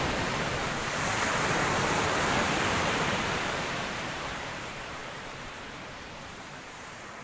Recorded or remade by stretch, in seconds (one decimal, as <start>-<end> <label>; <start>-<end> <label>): 0.0-1.1 remade; 1.1-1.7 recorded; 1.7-7.2 remade